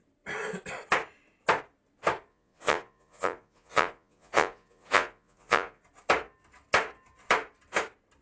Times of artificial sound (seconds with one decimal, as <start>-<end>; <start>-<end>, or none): 2.3-5.8